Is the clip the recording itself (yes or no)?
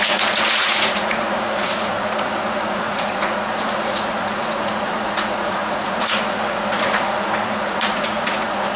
no